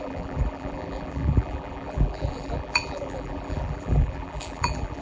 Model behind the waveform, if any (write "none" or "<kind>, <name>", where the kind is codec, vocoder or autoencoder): vocoder, BigVGAN v2